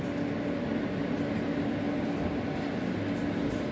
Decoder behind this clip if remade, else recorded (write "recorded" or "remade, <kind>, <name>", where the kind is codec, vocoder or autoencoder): recorded